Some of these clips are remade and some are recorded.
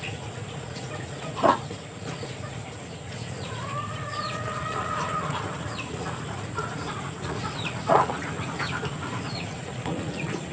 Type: remade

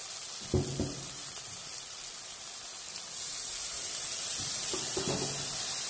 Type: recorded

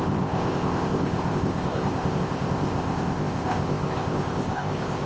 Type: remade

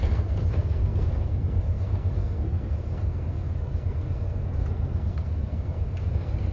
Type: remade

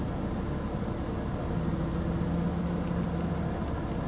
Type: recorded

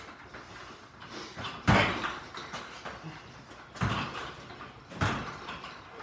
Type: recorded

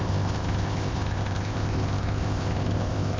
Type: remade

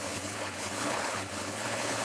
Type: remade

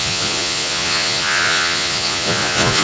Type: remade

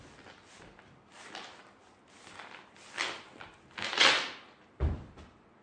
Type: recorded